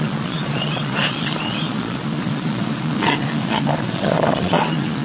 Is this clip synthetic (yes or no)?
yes